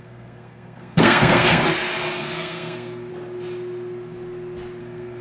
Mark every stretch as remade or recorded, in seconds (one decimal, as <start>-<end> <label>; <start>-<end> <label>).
0.0-1.6 remade; 1.6-2.2 recorded; 2.2-3.1 remade; 3.1-4.8 recorded; 4.8-5.2 remade